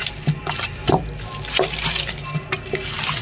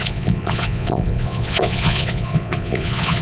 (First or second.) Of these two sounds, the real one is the first